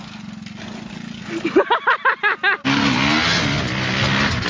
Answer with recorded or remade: recorded